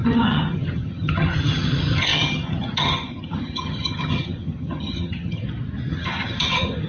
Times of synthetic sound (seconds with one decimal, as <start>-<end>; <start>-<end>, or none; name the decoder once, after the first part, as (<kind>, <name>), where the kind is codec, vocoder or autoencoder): 0.0-5.4 (vocoder, HiFi-GAN); 5.9-6.9